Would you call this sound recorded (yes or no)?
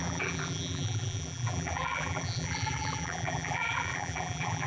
no